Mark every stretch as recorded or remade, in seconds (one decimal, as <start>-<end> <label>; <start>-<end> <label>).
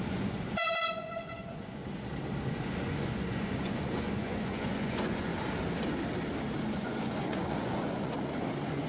0.0-1.8 remade; 1.8-2.5 recorded; 2.5-5.3 remade; 5.3-6.7 recorded; 6.7-8.9 remade